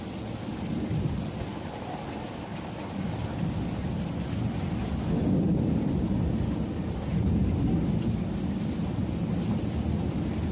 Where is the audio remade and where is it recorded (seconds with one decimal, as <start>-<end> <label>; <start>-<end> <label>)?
0.0-10.5 recorded